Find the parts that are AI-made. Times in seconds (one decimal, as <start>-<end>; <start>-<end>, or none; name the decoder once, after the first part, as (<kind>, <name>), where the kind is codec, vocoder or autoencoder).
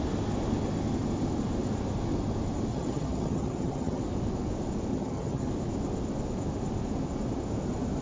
2.7-4.0 (vocoder, HiFi-GAN); 4.9-5.5